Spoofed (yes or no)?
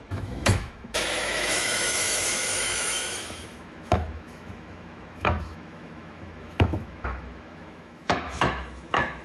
yes